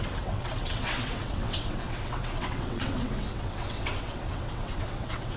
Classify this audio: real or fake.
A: fake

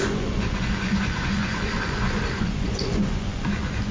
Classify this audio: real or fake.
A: fake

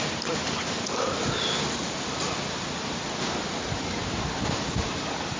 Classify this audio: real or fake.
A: real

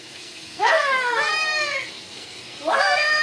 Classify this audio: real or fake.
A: fake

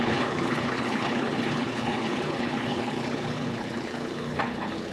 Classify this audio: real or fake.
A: fake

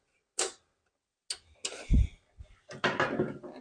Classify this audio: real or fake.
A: real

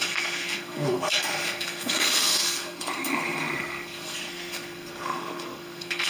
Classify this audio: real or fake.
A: fake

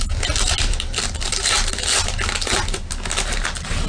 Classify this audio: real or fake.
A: real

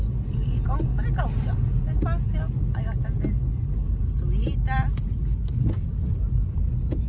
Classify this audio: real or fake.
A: real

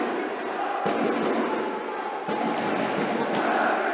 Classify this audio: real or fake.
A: real